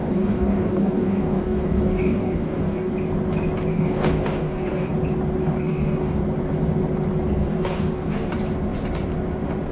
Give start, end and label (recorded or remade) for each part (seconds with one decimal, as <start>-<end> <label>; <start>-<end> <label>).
0.0-2.9 remade; 2.9-3.7 recorded; 3.7-4.9 remade; 4.9-5.4 recorded; 5.4-6.2 remade; 6.2-7.4 recorded; 7.4-8.3 remade; 8.3-9.7 recorded